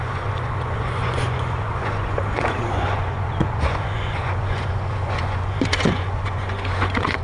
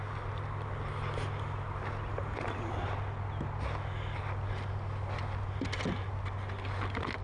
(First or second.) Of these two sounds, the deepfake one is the first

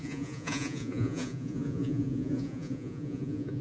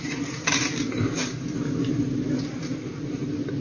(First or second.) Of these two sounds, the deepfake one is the first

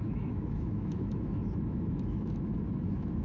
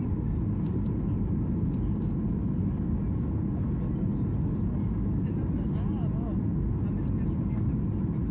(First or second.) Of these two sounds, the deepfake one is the first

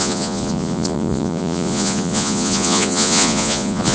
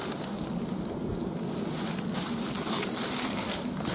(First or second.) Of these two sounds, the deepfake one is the first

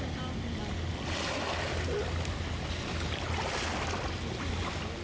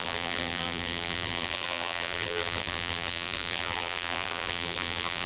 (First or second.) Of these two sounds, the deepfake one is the second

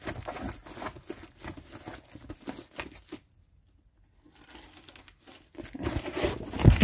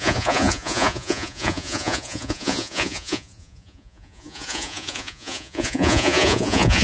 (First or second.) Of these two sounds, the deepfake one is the second